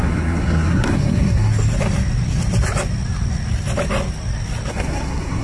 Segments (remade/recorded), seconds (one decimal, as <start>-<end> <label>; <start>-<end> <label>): 0.0-1.5 remade; 1.5-4.7 recorded; 4.7-5.4 remade